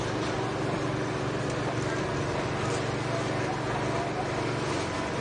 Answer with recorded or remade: recorded